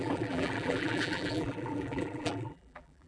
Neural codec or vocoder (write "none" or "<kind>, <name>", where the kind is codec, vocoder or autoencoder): vocoder, BigVGAN v2